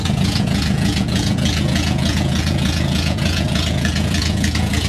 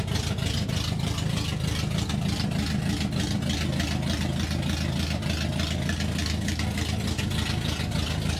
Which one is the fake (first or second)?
first